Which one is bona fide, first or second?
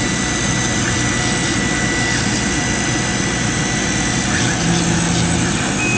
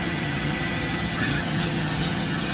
first